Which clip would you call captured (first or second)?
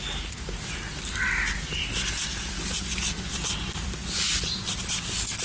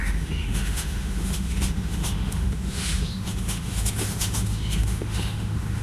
first